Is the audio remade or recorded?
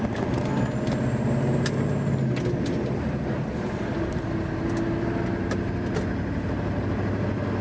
recorded